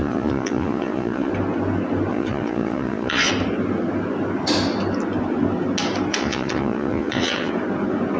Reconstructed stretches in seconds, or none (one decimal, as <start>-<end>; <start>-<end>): 0.0-1.3; 2.1-3.3; 6.1-7.5